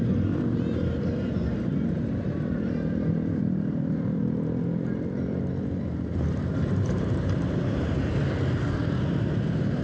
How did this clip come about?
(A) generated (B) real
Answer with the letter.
A